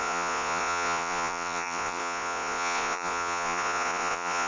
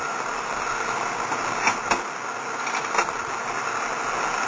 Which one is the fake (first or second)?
first